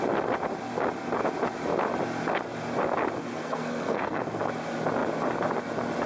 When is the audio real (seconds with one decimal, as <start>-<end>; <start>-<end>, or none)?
0.0-3.2; 4.4-6.1